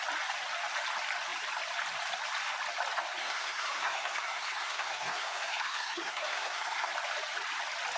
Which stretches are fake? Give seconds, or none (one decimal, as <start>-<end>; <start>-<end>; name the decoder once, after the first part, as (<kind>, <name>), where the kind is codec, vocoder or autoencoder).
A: 3.2-6.9 (codec, SNAC)